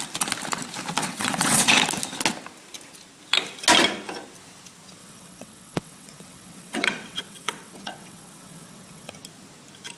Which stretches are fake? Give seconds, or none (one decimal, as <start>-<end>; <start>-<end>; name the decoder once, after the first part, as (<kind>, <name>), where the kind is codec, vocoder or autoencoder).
1.0-1.7 (vocoder, WaveNeXt); 5.0-9.1